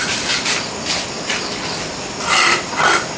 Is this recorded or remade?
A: recorded